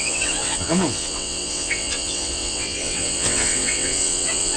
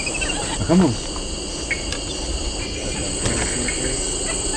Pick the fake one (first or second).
first